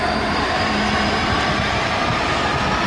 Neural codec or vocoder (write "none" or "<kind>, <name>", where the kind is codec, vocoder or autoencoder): vocoder, BigVGAN v2